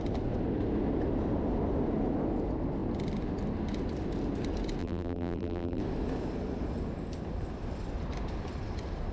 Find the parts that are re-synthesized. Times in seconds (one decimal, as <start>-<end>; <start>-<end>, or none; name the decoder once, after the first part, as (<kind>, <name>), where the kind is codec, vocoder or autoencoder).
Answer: 4.8-5.8 (vocoder, BigVGAN v2)